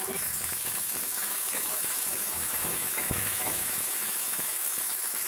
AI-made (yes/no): yes